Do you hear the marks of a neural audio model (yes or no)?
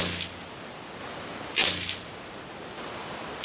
no